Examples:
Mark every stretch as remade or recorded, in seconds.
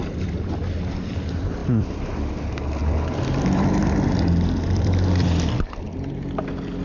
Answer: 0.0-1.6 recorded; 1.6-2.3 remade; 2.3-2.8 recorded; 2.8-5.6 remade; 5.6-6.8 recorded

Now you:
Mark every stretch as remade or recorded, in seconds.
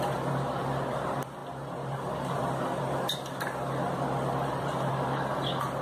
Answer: 0.0-5.8 recorded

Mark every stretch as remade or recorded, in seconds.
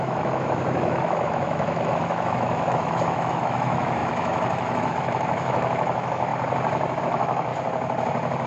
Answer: 0.0-6.3 remade; 6.3-7.0 recorded; 7.0-7.5 remade; 7.5-8.5 recorded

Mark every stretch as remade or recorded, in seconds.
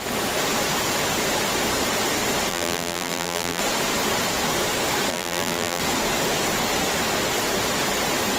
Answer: 0.0-2.5 recorded; 2.5-3.6 remade; 3.6-5.1 recorded; 5.1-5.8 remade; 5.8-8.4 recorded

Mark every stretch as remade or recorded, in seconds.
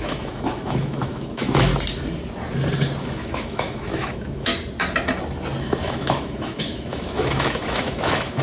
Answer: 0.0-1.7 remade; 1.7-3.0 recorded; 3.0-4.5 remade; 4.5-5.6 recorded; 5.6-8.4 remade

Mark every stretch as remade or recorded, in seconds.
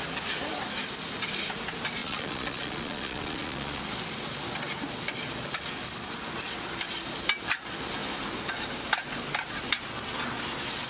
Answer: 0.0-2.0 recorded; 2.0-3.8 remade; 3.8-10.9 recorded